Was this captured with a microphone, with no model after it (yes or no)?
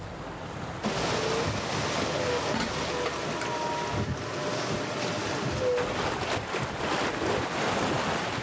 yes